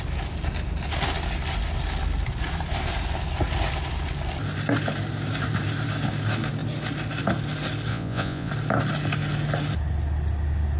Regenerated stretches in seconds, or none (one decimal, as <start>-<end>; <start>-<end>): 7.9-8.5